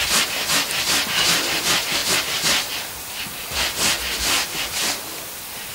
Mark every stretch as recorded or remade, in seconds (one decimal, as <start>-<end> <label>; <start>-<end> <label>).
0.0-5.7 recorded